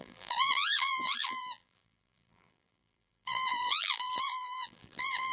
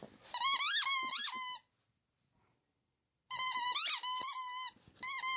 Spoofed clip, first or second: first